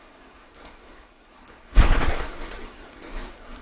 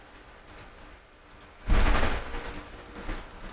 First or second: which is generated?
first